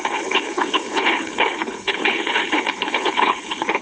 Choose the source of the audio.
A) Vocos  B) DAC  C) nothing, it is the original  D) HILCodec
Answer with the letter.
D